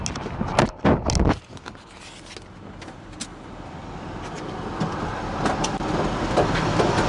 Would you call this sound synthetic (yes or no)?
no